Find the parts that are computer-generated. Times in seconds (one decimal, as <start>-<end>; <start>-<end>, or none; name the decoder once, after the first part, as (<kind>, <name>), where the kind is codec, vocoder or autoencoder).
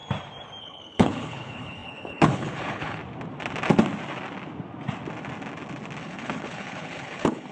0.6-3.0 (codec, HILCodec); 6.0-7.5